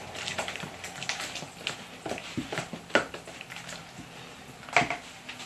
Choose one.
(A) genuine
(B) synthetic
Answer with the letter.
A